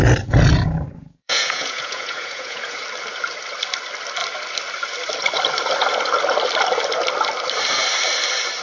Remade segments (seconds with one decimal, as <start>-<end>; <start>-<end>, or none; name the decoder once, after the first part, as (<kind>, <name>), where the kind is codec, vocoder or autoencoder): 1.0-2.8 (vocoder, Vocos)